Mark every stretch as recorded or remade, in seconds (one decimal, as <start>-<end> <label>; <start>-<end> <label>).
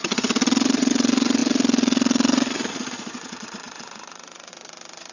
0.0-5.1 remade